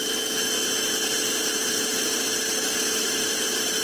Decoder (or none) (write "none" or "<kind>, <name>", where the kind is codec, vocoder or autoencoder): none